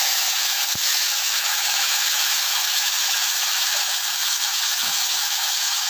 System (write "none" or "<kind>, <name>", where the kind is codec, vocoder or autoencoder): autoencoder, DAC-VAE